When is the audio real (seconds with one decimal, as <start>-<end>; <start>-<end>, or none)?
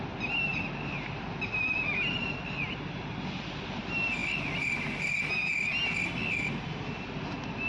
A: 0.0-7.7